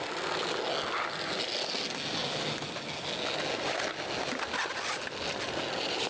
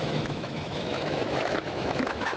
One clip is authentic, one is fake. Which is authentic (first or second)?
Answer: first